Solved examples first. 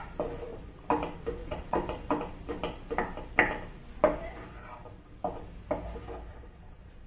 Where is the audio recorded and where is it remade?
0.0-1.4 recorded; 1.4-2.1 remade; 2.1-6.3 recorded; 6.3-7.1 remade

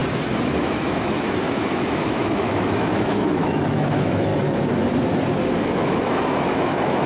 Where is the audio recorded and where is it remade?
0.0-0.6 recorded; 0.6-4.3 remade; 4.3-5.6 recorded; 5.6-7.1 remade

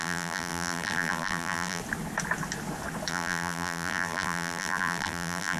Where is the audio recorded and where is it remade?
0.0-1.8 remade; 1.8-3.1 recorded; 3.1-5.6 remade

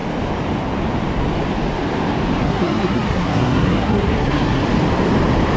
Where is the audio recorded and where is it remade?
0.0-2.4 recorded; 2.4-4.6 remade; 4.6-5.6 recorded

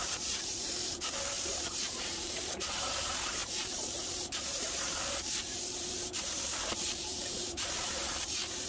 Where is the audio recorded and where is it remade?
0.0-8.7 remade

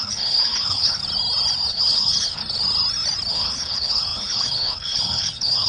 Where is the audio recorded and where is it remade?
0.0-1.0 remade; 1.0-1.7 recorded; 1.7-2.4 remade; 2.4-3.3 recorded; 3.3-5.7 remade